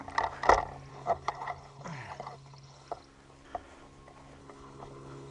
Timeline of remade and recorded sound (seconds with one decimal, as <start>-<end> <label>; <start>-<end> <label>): 0.0-0.9 recorded; 0.9-3.0 remade; 3.0-4.4 recorded; 4.4-5.3 remade